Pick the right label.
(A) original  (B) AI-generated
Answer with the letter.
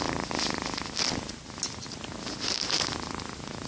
A